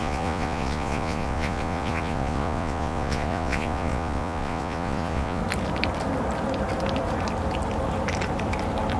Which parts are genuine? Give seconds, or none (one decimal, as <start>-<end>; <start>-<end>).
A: 5.4-9.0